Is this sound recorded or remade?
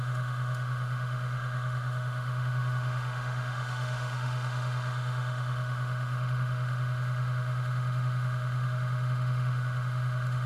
remade